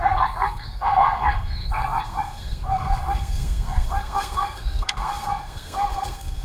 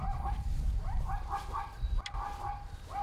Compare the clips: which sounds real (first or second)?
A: second